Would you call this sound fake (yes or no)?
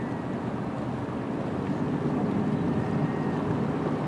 no